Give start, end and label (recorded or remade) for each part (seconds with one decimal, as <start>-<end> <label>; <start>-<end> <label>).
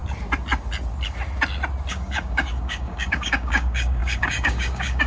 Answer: 0.0-1.9 recorded; 1.9-5.1 remade